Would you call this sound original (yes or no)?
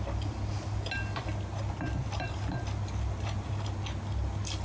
yes